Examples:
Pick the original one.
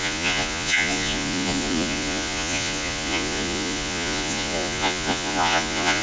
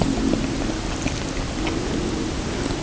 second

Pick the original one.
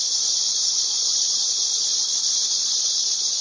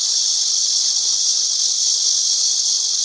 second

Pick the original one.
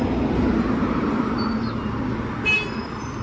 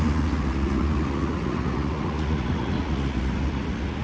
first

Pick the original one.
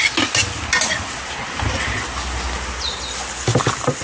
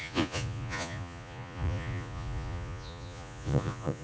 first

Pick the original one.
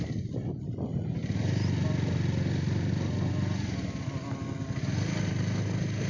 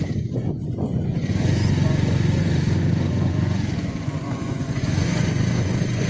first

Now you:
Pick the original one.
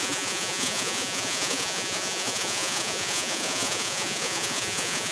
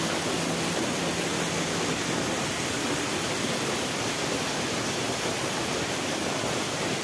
second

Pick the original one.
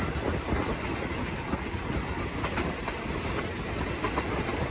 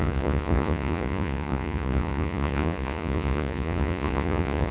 first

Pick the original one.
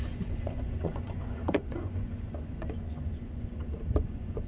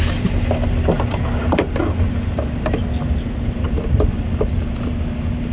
second